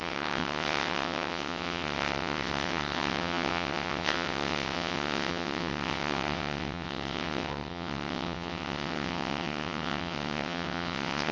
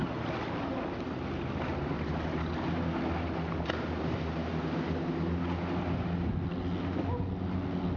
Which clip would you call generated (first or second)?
first